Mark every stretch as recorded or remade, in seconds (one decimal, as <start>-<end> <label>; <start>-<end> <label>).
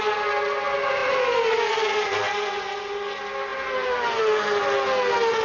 0.0-5.4 recorded